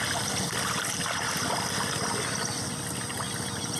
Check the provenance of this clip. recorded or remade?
recorded